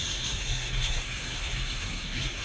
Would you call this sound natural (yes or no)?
no